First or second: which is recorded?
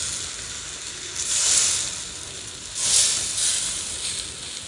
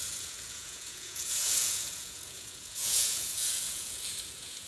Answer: first